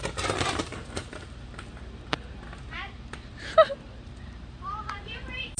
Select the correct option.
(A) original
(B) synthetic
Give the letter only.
B